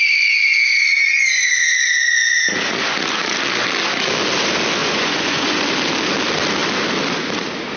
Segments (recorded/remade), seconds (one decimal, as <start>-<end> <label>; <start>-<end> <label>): 0.0-4.8 recorded; 4.8-5.6 remade; 5.6-7.8 recorded